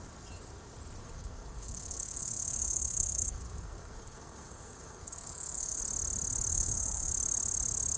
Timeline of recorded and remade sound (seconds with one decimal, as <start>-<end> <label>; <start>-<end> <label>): 0.0-1.0 recorded; 1.0-5.8 remade; 5.8-6.5 recorded; 6.5-7.1 remade; 7.1-8.0 recorded